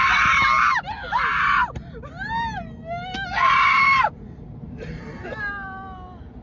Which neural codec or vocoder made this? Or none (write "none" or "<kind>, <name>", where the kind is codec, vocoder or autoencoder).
none